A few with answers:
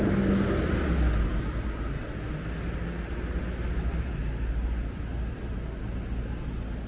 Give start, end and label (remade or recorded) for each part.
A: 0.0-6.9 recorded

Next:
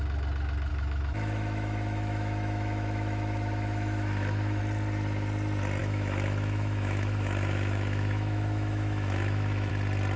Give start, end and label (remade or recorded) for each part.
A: 0.0-0.7 recorded; 0.7-4.6 remade; 4.6-5.8 recorded; 5.8-9.7 remade; 9.7-10.2 recorded